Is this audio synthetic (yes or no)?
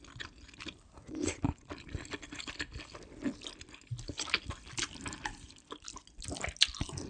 no